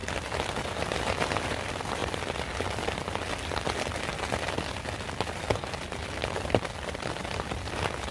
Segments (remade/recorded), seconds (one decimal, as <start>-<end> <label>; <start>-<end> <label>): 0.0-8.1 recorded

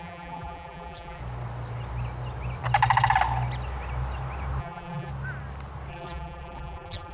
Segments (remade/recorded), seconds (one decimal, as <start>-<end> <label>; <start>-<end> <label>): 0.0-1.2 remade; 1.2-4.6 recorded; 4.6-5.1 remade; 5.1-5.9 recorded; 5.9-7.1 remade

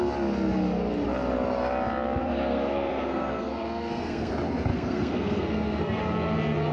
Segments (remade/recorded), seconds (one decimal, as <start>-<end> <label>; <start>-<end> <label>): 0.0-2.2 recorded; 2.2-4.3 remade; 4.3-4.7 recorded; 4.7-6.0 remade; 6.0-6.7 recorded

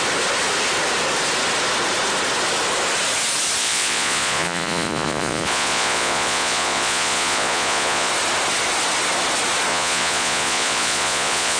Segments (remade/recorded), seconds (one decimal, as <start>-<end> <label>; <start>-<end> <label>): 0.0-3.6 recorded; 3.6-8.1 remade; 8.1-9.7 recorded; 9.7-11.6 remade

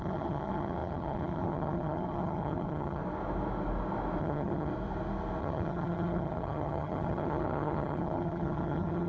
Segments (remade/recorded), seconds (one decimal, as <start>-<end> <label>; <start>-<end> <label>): 0.0-3.0 remade; 3.0-4.2 recorded; 4.2-4.7 remade; 4.7-5.4 recorded; 5.4-9.1 remade

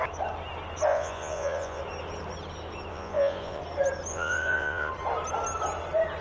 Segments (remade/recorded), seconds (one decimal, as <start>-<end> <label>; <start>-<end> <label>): 0.0-0.9 recorded; 0.9-1.8 remade; 1.8-2.9 recorded; 2.9-3.6 remade; 3.6-4.1 recorded; 4.1-4.9 remade; 4.9-6.2 recorded

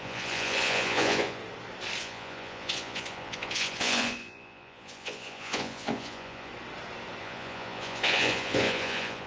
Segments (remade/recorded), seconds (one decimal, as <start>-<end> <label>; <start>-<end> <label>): 0.0-1.4 remade; 1.4-2.0 recorded; 2.0-6.5 remade; 6.5-7.2 recorded; 7.2-9.3 remade